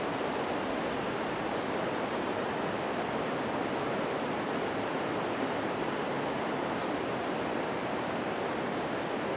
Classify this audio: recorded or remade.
recorded